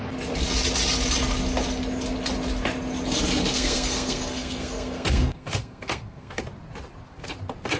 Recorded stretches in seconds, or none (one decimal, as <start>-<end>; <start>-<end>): 0.0-3.4; 6.4-7.8